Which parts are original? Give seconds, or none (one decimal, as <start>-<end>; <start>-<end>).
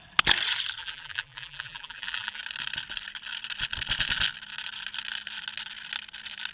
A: 0.0-0.8; 2.4-6.5